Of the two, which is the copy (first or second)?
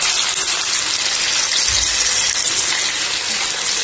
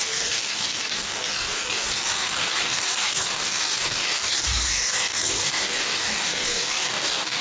second